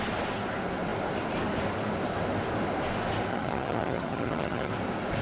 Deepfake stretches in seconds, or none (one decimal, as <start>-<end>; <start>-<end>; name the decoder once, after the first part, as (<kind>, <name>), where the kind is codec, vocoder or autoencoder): 3.3-4.7 (vocoder, HiFi-GAN)